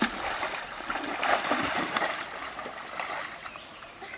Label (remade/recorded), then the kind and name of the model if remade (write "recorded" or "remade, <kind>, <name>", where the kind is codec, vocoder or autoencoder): remade, vocoder, BigVGAN v2